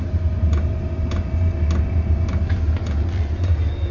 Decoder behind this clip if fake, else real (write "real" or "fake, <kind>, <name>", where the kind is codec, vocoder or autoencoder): real